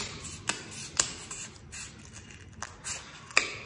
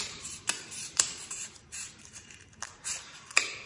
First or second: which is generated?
second